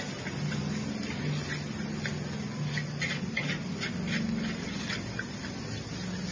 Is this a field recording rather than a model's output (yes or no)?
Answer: yes